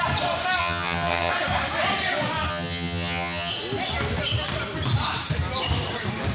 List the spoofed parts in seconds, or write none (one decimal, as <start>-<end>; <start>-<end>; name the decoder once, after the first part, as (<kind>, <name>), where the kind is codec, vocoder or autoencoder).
0.6-1.3 (vocoder, HiFi-GAN); 2.5-3.5